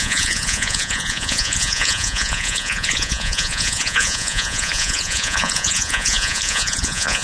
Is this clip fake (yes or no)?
yes